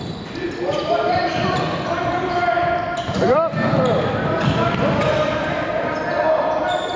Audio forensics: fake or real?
fake